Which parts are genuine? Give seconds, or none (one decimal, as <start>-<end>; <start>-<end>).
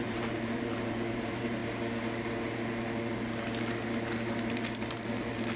1.6-4.8